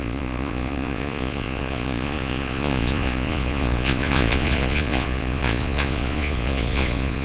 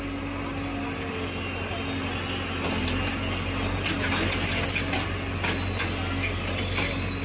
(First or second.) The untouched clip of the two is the second